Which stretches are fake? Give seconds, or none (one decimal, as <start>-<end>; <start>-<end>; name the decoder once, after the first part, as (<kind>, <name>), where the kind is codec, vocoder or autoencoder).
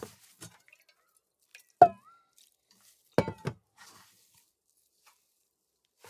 none